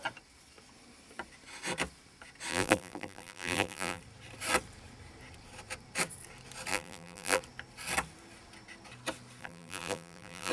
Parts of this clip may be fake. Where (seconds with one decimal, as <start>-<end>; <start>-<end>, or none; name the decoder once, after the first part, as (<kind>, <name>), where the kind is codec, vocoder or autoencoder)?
2.5-4.0 (vocoder, BigVGAN v2); 6.7-7.4; 9.4-10.5